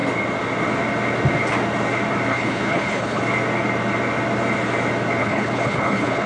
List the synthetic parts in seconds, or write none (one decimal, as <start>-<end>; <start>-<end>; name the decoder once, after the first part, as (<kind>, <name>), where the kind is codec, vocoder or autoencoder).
2.3-3.2 (codec, HILCodec); 5.2-6.3